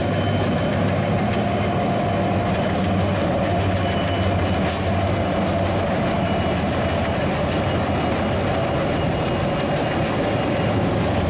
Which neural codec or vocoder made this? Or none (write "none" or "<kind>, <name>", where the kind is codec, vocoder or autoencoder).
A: none